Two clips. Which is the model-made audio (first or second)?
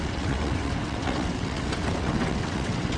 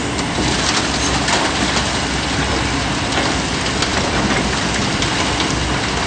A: first